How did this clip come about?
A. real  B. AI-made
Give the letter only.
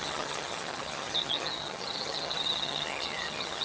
B